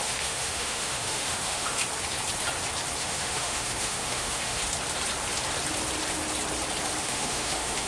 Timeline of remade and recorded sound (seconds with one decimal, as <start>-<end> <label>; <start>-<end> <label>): 0.0-1.8 remade; 1.8-3.0 recorded; 3.0-4.6 remade; 4.6-7.0 recorded; 7.0-7.9 remade